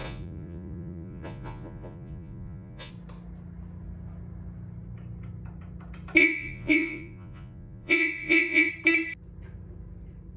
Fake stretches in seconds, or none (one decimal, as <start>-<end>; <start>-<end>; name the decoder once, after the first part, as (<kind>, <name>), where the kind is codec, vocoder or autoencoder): 0.0-2.9 (vocoder, Vocos); 6.2-8.7